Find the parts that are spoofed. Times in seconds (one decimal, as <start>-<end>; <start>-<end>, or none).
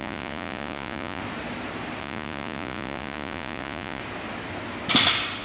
0.0-1.2; 2.0-4.0